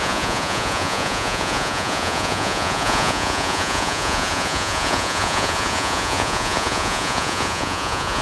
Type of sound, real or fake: fake